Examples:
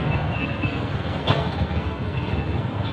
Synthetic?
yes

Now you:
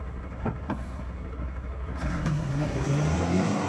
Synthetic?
yes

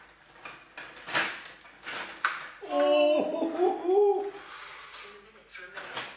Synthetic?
no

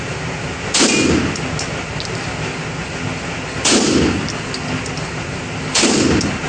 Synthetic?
no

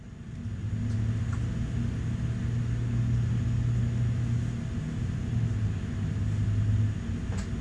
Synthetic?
no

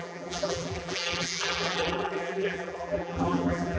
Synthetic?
yes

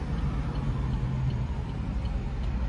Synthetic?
no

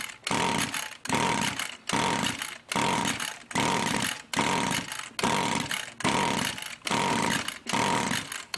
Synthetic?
no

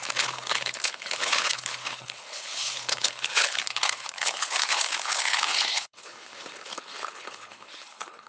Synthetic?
yes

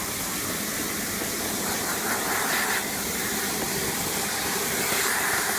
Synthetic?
yes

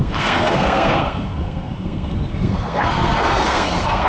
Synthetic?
yes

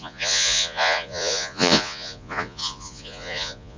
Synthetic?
yes